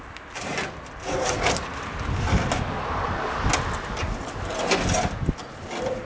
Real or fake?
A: real